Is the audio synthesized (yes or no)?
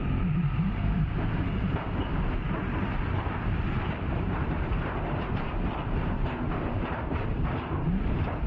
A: yes